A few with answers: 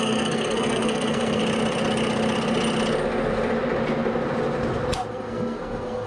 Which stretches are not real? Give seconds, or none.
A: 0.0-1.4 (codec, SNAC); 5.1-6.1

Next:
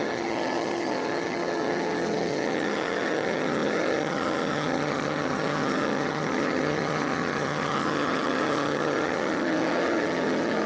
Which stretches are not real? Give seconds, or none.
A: 0.0-10.7 (vocoder, HiFi-GAN)

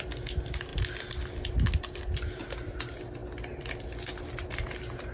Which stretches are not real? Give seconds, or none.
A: none

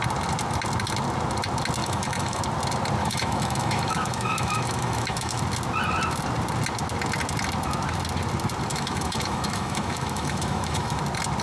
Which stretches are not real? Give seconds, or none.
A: 1.8-2.4 (autoencoder, DAC-VAE); 3.0-5.4; 8.7-11.0

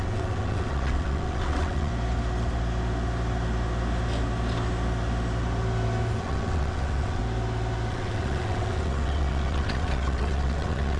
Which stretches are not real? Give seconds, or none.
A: 0.0-1.9 (vocoder, WaveNeXt); 6.2-7.2; 7.9-11.0

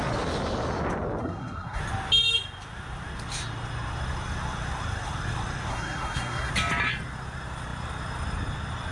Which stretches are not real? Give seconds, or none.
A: 1.2-1.8 (codec, SNAC); 5.7-6.5